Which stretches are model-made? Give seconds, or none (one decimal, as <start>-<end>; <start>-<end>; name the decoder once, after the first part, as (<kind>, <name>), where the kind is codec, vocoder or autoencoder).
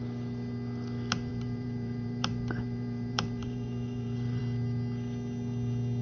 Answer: 1.3-4.4 (vocoder, BigVGAN v2)